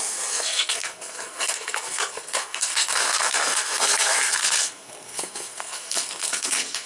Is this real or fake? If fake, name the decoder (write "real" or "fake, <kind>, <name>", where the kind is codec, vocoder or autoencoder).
fake, codec, SNAC